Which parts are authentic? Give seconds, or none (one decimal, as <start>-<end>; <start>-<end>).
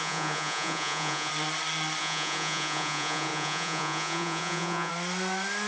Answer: 1.3-2.0; 4.9-5.7